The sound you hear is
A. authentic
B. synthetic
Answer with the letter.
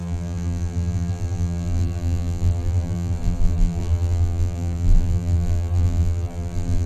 B